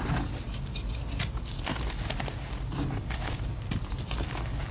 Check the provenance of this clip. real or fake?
real